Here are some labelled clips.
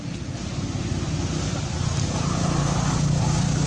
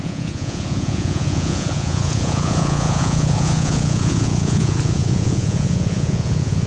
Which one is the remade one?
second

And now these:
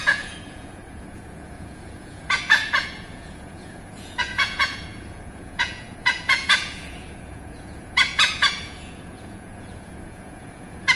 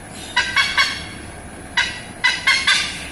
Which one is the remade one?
first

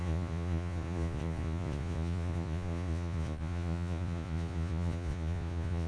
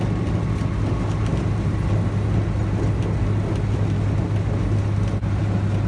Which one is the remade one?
first